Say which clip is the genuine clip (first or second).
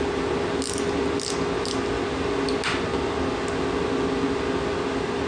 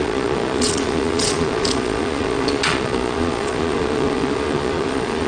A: first